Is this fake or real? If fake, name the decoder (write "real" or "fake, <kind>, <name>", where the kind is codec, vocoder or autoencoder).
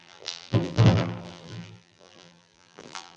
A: fake, vocoder, BigVGAN v2